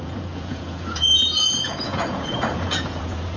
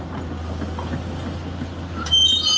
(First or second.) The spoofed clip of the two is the first